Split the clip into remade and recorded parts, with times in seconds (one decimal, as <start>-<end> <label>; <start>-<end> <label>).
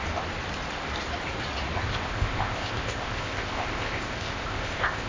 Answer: 0.0-1.9 recorded; 1.9-5.1 remade